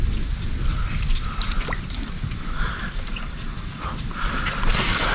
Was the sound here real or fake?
real